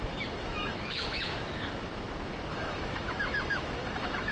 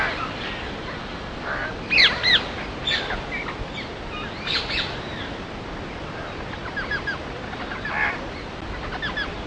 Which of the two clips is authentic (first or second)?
second